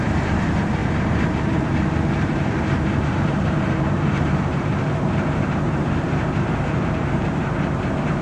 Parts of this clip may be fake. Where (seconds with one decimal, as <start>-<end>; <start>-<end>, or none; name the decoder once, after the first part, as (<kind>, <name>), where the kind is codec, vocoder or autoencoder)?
0.0-8.2 (vocoder, BigVGAN v2)